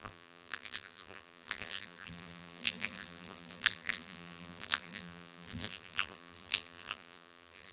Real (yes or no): no